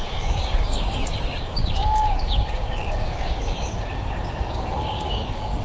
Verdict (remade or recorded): remade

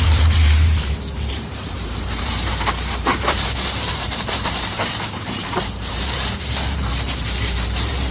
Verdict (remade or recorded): remade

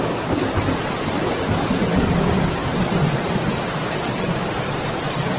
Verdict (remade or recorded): recorded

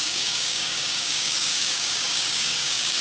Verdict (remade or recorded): remade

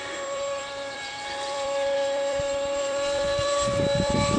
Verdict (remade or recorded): remade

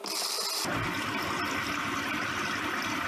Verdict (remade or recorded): recorded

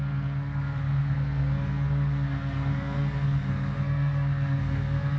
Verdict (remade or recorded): remade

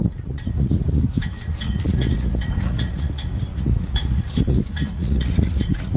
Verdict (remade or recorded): remade